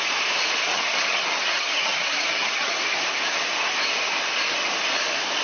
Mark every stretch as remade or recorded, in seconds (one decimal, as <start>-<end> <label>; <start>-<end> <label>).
0.0-0.7 recorded; 0.7-2.7 remade; 2.7-5.4 recorded